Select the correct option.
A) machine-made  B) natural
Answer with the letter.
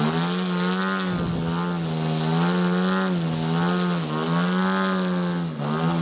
B